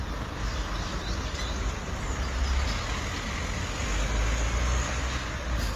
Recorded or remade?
recorded